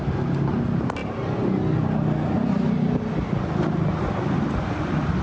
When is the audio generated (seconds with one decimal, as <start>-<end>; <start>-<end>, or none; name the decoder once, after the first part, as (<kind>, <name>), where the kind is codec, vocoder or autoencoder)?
none